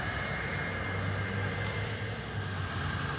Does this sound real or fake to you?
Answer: real